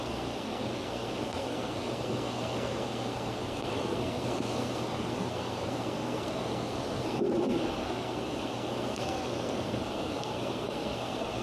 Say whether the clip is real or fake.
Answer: fake